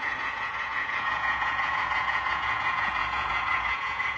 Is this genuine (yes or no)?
no